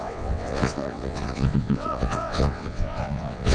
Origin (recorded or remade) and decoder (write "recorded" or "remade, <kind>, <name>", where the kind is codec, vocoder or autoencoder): remade, vocoder, WaveNeXt